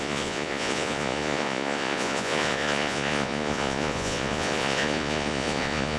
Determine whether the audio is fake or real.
fake